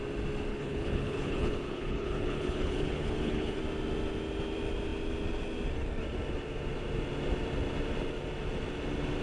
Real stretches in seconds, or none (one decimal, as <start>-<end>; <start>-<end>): 0.0-0.5; 3.6-9.2